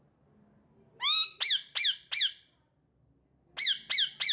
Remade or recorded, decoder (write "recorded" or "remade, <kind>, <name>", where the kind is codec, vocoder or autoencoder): recorded